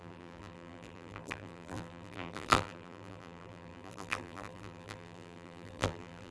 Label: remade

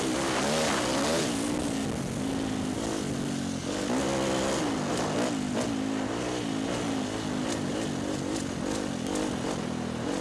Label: recorded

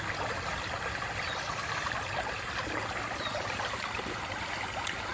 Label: recorded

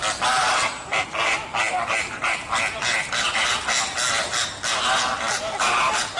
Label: recorded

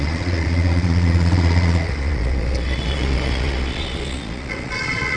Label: remade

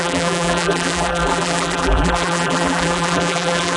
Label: remade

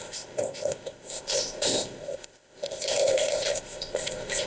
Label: remade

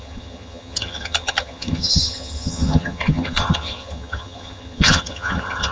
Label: remade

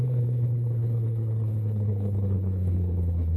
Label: remade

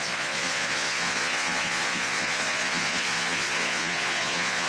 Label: remade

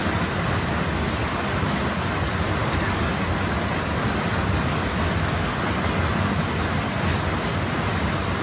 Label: recorded